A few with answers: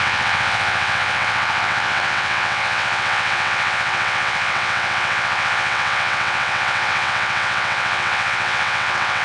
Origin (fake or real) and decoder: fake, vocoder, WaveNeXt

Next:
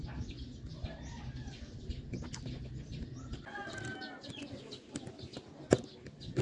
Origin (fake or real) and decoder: real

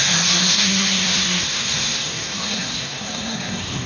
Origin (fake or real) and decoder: fake, codec, SNAC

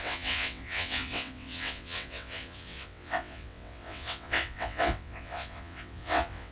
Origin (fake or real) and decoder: fake, vocoder, WaveNeXt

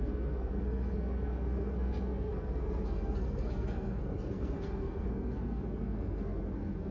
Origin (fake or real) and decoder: fake, codec, SNAC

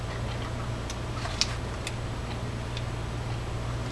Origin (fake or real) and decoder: real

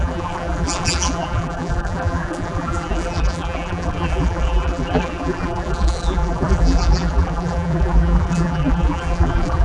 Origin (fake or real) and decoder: fake, vocoder, BigVGAN v2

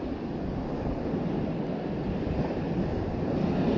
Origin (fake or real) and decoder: real